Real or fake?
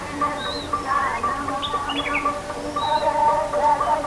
real